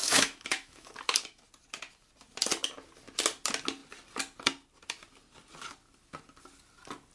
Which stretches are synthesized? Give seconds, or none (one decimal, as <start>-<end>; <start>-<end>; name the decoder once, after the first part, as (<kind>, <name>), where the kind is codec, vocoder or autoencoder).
0.0-1.0 (autoencoder, DAC-VAE)